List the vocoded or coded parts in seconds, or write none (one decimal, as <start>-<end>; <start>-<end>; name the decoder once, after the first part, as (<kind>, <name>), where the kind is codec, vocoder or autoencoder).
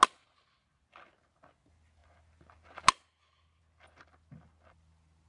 none